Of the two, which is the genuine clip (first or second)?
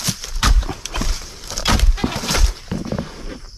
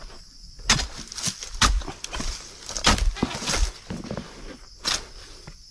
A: second